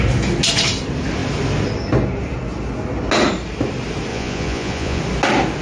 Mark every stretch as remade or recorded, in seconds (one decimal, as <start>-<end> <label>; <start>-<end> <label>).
0.0-4.1 recorded; 4.1-5.0 remade; 5.0-5.6 recorded

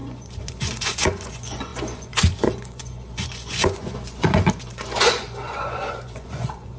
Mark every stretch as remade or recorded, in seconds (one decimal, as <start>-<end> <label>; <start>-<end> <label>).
0.0-6.8 remade

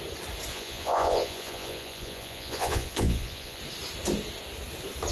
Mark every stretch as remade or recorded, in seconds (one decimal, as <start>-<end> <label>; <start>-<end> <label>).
0.0-0.5 recorded; 0.5-3.6 remade; 3.6-5.1 recorded

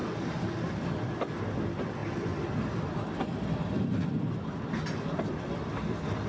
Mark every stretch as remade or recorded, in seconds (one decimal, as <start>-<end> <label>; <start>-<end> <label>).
0.0-6.3 recorded

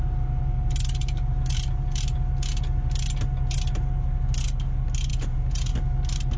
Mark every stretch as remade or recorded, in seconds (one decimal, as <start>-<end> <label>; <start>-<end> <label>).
0.0-5.1 recorded; 5.1-5.7 remade; 5.7-6.4 recorded

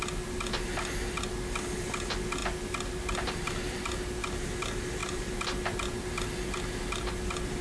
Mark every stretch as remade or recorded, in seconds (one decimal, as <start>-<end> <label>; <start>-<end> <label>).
0.0-7.6 recorded

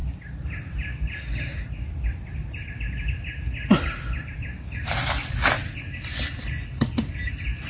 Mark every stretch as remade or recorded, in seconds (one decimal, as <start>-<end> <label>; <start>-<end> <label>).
0.0-7.7 recorded

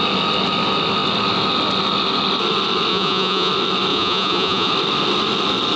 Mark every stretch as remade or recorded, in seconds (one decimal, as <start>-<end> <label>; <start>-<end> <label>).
0.0-2.9 recorded; 2.9-3.5 remade; 3.5-3.9 recorded; 3.9-4.7 remade; 4.7-5.8 recorded